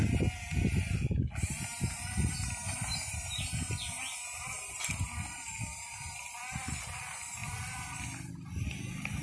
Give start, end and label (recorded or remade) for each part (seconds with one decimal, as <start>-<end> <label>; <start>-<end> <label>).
0.0-9.2 recorded